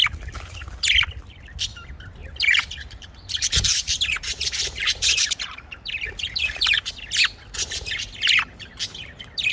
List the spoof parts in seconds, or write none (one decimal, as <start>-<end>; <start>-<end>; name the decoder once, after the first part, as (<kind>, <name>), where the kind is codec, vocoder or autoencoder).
0.0-0.5 (vocoder, BigVGAN v2); 2.2-6.9